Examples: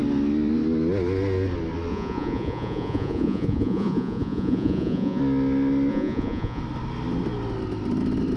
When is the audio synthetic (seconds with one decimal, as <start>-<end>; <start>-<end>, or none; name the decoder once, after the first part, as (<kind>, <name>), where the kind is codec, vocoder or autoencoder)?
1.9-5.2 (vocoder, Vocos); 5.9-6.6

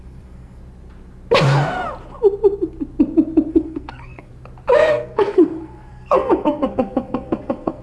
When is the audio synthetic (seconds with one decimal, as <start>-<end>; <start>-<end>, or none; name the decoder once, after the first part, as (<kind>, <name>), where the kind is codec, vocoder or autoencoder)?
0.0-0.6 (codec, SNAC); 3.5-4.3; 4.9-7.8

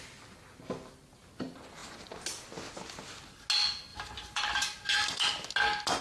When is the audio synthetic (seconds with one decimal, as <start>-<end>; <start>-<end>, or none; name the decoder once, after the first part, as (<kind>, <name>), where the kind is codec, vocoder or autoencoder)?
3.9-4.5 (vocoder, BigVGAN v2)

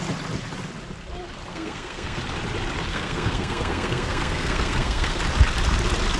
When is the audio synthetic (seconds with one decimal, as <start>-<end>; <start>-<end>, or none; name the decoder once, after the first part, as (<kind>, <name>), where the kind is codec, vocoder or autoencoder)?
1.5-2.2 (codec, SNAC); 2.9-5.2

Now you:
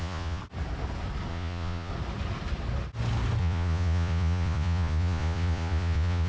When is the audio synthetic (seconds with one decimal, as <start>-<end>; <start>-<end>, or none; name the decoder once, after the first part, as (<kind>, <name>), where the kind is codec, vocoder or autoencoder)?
0.0-0.4 (vocoder, Vocos); 1.3-1.9; 3.4-6.3

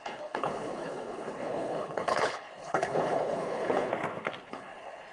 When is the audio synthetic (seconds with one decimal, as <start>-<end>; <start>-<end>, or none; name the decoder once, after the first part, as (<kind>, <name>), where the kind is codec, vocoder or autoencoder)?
0.0-3.9 (codec, HILCodec); 4.5-5.1

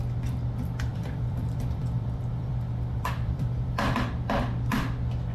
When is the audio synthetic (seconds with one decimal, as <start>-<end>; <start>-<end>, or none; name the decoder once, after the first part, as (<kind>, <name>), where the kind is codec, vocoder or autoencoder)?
0.9-4.1 (vocoder, BigVGAN v2)